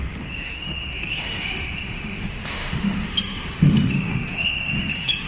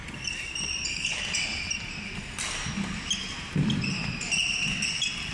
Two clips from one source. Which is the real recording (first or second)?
second